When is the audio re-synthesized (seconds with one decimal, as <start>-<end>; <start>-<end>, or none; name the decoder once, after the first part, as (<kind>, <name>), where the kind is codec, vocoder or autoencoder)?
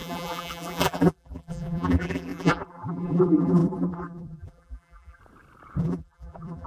0.0-5.2 (vocoder, BigVGAN v2); 5.8-6.7